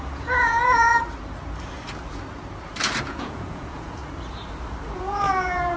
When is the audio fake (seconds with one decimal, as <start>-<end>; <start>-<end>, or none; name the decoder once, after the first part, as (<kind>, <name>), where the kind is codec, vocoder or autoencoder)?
0.0-0.9 (vocoder, Vocos); 3.0-4.0; 5.0-5.8